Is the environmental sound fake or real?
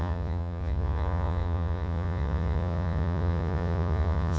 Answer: fake